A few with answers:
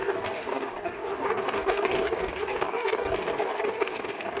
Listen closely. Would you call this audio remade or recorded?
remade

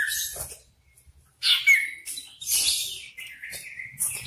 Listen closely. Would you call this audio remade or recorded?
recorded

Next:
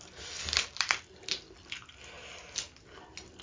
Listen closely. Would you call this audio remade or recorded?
recorded